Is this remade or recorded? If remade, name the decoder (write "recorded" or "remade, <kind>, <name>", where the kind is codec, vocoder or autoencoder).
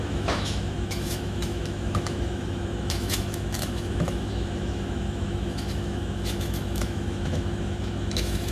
remade, autoencoder, DAC-VAE